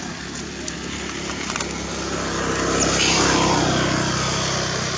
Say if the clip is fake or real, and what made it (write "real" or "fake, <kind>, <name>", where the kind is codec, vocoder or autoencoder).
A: real